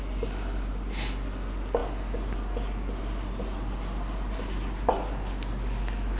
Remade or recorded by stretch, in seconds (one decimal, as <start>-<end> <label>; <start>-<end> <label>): 0.0-6.2 recorded